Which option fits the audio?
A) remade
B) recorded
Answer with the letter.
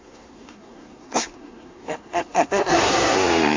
A